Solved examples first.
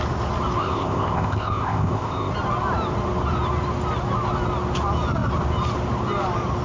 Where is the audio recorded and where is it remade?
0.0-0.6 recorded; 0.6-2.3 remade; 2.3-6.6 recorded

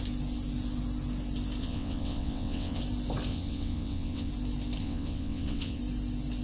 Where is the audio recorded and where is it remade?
0.0-1.6 recorded; 1.6-2.8 remade; 2.8-3.3 recorded; 3.3-4.3 remade; 4.3-4.8 recorded; 4.8-5.8 remade; 5.8-6.4 recorded

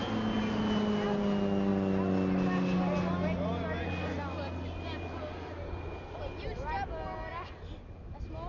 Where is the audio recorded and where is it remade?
0.0-8.5 recorded

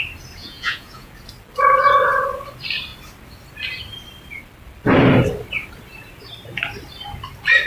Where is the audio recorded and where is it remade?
0.0-0.4 recorded; 0.4-1.1 remade; 1.1-7.7 recorded